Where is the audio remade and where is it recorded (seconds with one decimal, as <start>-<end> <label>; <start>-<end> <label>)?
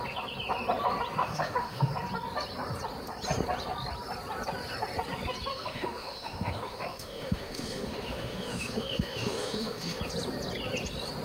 0.0-1.2 recorded; 1.2-1.9 remade; 1.9-5.5 recorded; 5.5-10.0 remade; 10.0-11.2 recorded